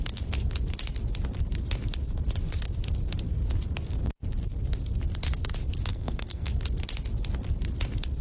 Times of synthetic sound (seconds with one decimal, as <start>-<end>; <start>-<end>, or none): 5.9-6.5